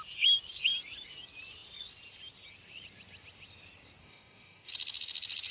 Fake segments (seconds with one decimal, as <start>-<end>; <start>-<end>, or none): 4.0-4.7